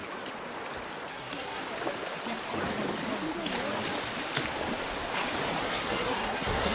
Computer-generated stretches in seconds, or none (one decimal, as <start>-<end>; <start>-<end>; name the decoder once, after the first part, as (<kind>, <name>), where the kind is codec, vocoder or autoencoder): 1.1-1.6 (codec, SNAC); 5.6-6.7